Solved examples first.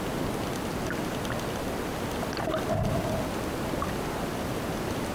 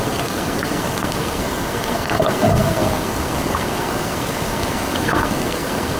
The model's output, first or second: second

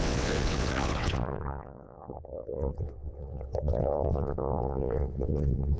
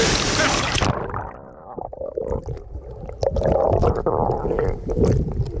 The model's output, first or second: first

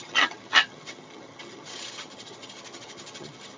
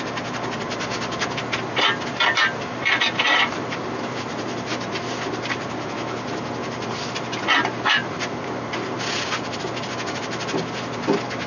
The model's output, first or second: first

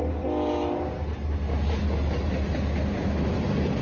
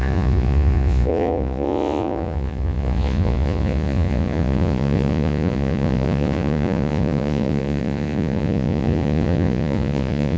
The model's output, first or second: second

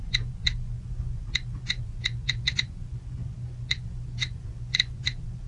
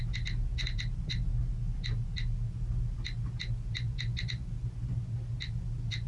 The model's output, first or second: first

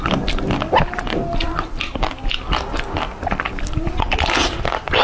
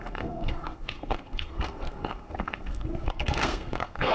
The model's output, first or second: second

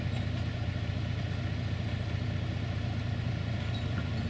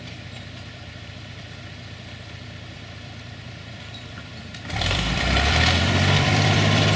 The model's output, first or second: second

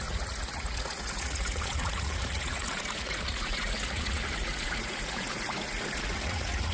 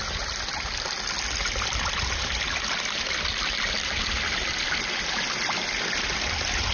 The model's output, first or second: first